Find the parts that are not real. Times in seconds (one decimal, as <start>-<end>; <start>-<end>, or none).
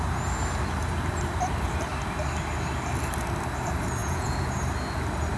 4.0-4.6